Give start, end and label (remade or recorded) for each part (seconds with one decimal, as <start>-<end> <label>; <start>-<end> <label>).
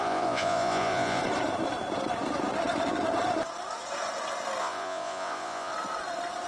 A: 0.0-1.2 remade; 1.2-4.6 recorded; 4.6-5.7 remade; 5.7-6.5 recorded